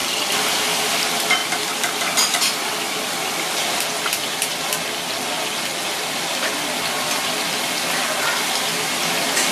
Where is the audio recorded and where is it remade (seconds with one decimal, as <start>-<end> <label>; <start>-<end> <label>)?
0.0-0.8 remade; 0.8-9.5 recorded